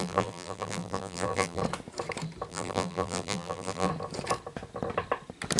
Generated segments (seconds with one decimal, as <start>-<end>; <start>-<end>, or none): 0.0-1.6; 2.5-3.9